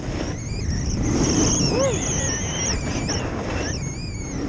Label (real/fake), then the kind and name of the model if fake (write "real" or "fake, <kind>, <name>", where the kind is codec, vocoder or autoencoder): real